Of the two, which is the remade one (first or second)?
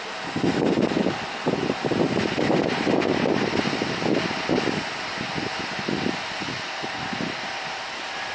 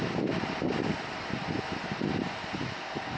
second